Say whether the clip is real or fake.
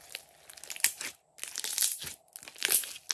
real